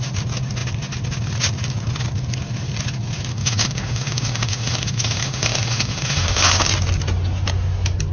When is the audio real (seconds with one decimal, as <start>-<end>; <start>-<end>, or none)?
0.0-3.3; 6.7-8.1